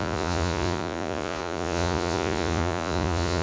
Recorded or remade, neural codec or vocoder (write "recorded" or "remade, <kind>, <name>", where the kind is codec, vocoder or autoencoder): remade, vocoder, Vocos